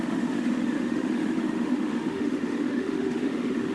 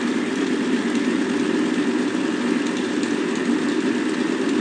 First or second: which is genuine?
second